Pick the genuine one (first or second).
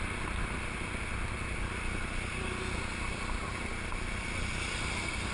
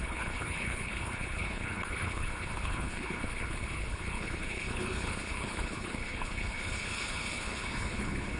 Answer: first